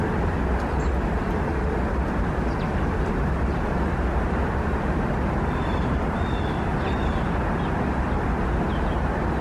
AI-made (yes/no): no